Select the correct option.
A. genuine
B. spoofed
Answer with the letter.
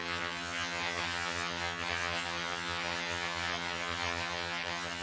B